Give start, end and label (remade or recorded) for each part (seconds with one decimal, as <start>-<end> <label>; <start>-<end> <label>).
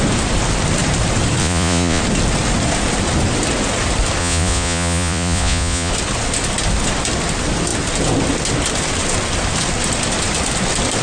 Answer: 0.0-1.4 recorded; 1.4-2.0 remade; 2.0-4.2 recorded; 4.2-5.9 remade; 5.9-11.0 recorded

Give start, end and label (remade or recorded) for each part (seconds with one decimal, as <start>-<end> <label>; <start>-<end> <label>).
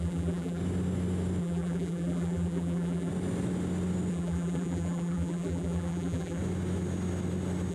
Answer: 0.0-0.6 remade; 0.6-1.4 recorded; 1.4-3.1 remade; 3.1-4.1 recorded; 4.1-6.4 remade; 6.4-7.7 recorded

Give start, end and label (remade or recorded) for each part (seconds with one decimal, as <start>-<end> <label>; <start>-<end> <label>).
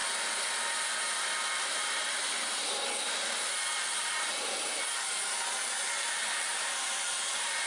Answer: 0.0-3.0 recorded; 3.0-7.7 remade